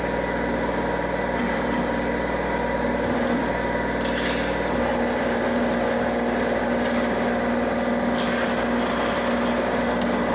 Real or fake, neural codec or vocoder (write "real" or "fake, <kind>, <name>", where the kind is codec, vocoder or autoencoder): real